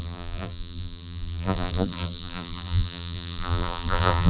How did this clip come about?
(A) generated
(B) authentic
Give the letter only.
A